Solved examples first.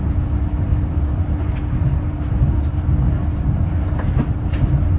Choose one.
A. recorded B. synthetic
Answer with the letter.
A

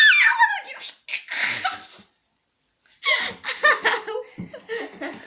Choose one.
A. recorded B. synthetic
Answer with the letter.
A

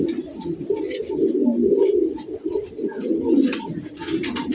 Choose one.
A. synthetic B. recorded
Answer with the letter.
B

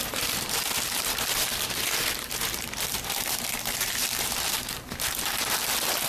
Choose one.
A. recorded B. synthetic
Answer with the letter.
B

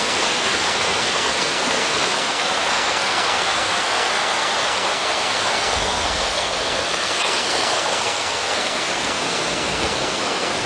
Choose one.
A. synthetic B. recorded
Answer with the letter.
A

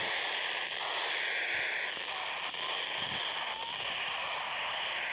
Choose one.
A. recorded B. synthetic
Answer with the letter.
A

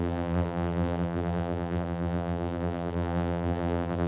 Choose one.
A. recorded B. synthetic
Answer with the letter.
B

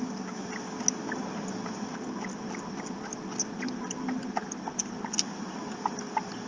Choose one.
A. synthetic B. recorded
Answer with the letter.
B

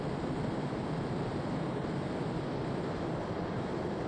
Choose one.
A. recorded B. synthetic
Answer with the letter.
A